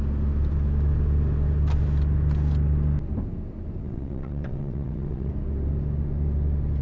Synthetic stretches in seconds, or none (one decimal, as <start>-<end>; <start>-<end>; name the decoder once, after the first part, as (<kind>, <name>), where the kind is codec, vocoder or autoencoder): 3.8-5.3 (vocoder, WaveNeXt)